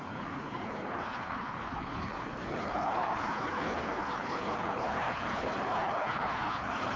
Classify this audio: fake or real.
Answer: fake